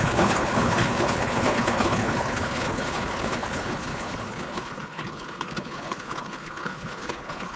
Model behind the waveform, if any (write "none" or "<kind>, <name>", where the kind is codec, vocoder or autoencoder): codec, HILCodec